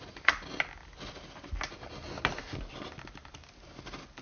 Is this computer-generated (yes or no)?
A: no